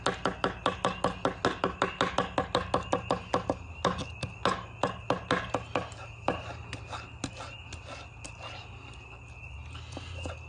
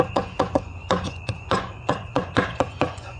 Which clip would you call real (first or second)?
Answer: first